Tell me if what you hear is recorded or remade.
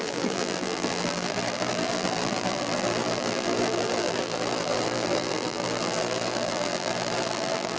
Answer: remade